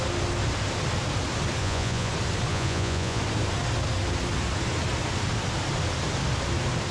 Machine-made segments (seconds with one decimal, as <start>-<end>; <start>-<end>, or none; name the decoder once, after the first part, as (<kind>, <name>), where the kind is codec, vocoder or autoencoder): 1.6-2.1 (vocoder, Vocos); 2.5-3.2